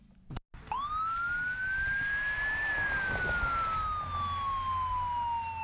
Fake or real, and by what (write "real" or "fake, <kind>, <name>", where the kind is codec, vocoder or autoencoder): real